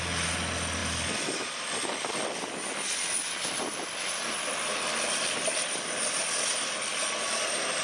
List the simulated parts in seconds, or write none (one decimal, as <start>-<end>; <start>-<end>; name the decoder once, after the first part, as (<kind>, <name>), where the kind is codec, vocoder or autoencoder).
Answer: none